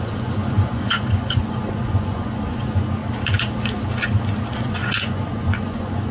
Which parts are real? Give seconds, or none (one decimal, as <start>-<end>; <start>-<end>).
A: 3.0-4.6